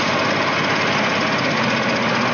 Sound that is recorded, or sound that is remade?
recorded